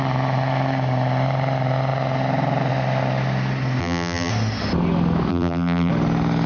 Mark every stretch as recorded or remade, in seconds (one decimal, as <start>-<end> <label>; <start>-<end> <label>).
0.0-3.8 recorded; 3.8-4.3 remade; 4.3-5.3 recorded; 5.3-5.9 remade; 5.9-6.5 recorded